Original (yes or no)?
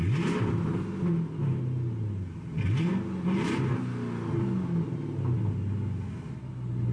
yes